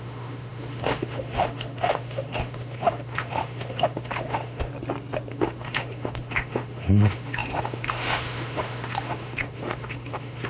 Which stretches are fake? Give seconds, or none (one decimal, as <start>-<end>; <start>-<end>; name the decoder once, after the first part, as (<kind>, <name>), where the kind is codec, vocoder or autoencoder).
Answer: 0.0-4.7 (autoencoder, DAC-VAE); 5.3-10.5